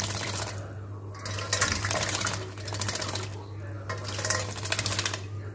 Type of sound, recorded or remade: recorded